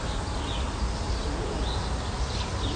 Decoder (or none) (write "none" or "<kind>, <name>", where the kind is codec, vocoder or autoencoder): none